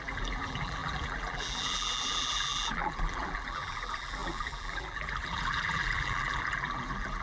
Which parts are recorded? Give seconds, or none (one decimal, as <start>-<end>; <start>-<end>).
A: none